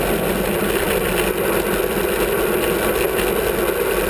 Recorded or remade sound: recorded